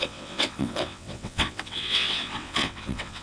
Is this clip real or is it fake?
fake